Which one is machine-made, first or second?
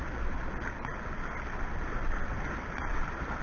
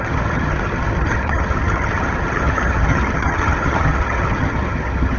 second